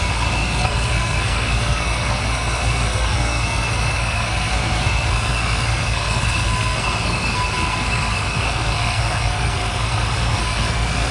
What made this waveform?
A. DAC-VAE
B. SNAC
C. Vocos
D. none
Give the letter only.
B